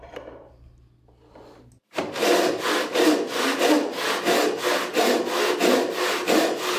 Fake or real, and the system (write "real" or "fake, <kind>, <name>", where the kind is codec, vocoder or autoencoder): real